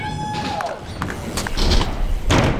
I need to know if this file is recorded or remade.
recorded